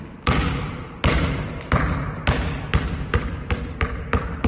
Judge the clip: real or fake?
real